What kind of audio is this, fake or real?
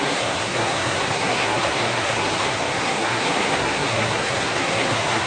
fake